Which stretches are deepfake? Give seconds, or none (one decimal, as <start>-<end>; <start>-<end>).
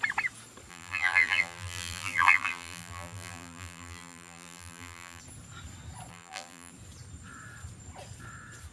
0.7-5.2; 6.1-6.7